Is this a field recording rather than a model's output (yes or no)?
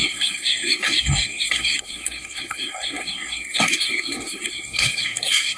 no